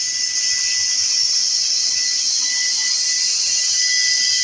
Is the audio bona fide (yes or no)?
yes